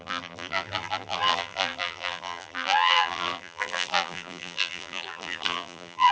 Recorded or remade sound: remade